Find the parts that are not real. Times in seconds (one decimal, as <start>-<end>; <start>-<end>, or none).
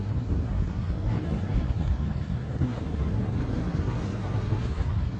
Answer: 0.0-5.2